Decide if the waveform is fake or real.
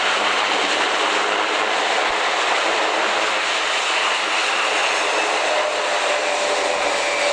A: real